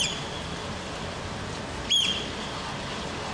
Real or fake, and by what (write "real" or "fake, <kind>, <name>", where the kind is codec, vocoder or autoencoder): real